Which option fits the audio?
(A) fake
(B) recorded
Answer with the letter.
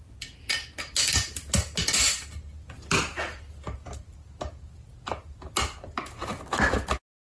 B